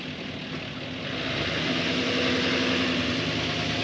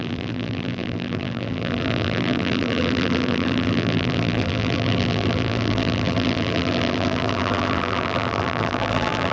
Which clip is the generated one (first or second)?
second